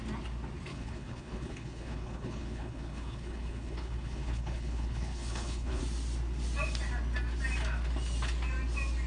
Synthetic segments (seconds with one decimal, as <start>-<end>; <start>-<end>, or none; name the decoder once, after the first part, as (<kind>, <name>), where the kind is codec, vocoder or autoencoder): 0.7-5.8 (codec, HILCodec)